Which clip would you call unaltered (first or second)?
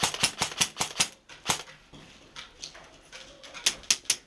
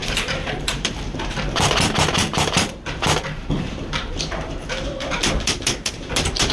first